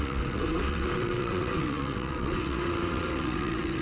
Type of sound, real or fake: fake